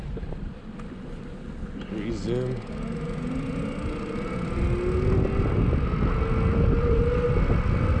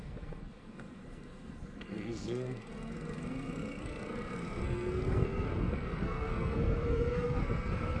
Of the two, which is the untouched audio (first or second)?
first